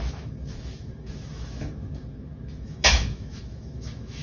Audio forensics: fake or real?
fake